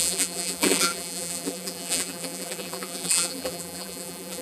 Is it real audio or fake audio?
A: fake